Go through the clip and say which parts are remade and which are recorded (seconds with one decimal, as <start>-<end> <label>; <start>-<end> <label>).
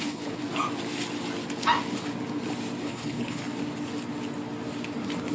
0.0-0.4 remade; 0.4-2.8 recorded; 2.8-3.4 remade; 3.4-5.3 recorded